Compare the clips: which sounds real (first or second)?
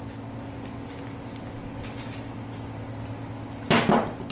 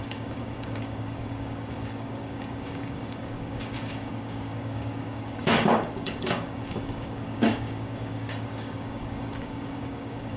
first